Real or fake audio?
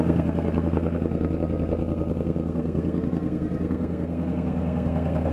fake